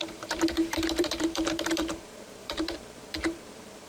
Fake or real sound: fake